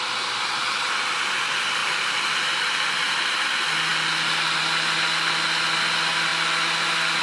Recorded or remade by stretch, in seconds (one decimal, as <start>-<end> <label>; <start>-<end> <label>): 0.0-7.2 recorded